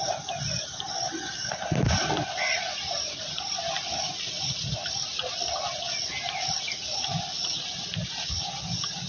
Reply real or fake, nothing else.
real